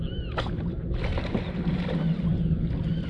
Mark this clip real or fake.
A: real